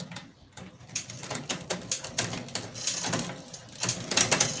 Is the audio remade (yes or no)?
no